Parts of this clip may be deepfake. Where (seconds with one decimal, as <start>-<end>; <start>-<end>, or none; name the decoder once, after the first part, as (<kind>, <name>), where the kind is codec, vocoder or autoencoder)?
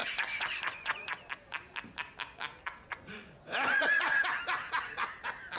0.0-1.3 (vocoder, Vocos); 2.9-4.2